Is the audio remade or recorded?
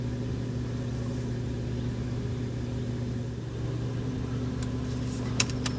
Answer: recorded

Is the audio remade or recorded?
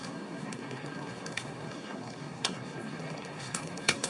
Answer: remade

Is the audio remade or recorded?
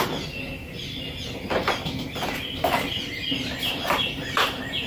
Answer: recorded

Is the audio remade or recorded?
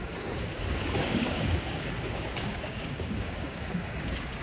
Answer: remade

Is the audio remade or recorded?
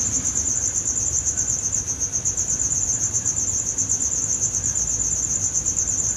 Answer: remade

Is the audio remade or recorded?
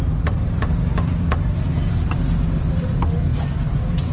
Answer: recorded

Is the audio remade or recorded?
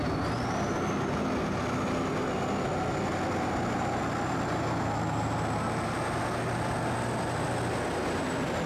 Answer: recorded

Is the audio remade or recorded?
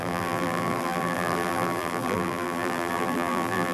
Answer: remade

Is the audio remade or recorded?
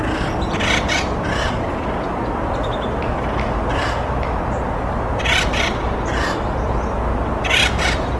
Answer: recorded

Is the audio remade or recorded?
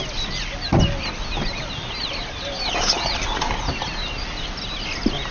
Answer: recorded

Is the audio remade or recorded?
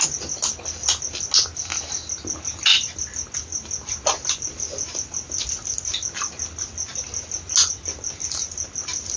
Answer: recorded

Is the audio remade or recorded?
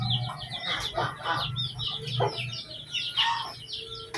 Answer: recorded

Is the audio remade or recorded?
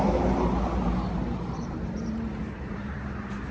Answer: remade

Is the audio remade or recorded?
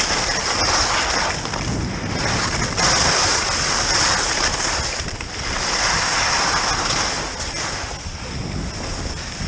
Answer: recorded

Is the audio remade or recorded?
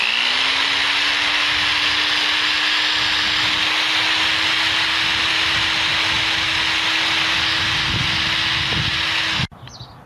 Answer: recorded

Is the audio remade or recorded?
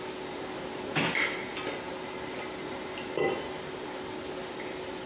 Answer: recorded